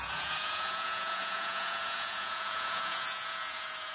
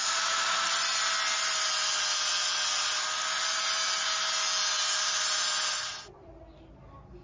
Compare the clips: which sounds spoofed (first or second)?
first